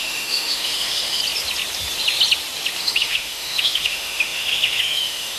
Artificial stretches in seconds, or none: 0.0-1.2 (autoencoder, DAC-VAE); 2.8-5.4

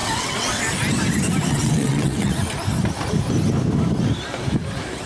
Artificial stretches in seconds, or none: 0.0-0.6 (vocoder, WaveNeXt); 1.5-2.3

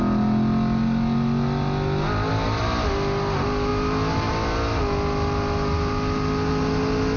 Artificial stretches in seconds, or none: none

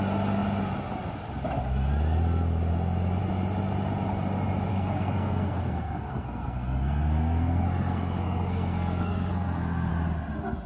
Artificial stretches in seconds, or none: 4.7-9.9 (codec, SNAC)

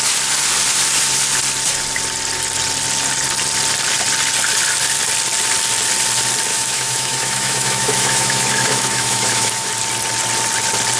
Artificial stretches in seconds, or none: 6.5-9.7 (autoencoder, DAC-VAE)

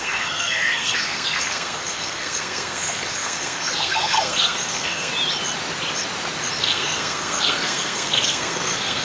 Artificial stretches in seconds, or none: 0.0-5.1 (codec, SNAC); 6.6-9.0

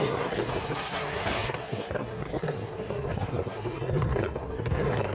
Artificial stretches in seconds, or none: 0.0-5.1 (codec, SNAC)

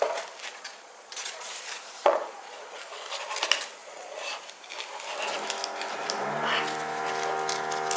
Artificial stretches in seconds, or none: 0.5-1.5 (vocoder, Vocos); 2.0-2.8; 3.8-4.4